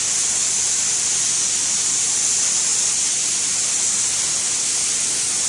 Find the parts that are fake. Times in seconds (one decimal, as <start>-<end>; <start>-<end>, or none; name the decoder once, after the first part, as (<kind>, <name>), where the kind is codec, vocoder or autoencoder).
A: none